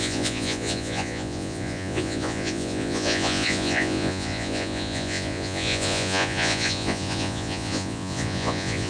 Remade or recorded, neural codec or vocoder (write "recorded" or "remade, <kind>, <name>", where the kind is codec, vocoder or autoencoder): remade, vocoder, Vocos